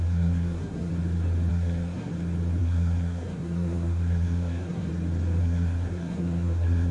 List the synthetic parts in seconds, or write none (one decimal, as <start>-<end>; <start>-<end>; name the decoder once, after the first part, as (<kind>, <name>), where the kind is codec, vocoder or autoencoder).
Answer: 0.0-0.9 (codec, SNAC); 1.5-2.1; 2.6-4.9; 5.4-6.9